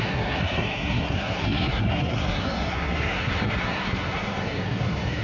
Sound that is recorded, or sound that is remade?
remade